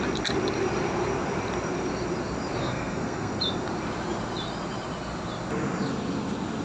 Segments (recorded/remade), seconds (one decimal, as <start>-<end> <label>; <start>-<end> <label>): 0.0-2.6 recorded; 2.6-3.3 remade; 3.3-6.6 recorded